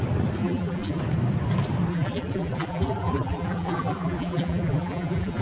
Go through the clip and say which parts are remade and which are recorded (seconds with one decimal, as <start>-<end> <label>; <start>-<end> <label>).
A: 0.0-0.4 recorded; 0.4-1.0 remade; 1.0-1.9 recorded; 1.9-5.4 remade